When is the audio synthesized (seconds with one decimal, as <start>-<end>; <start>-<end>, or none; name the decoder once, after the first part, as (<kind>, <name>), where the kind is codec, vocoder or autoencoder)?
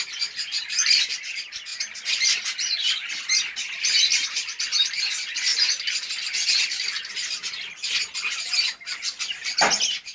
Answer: 1.7-2.4 (vocoder, BigVGAN v2)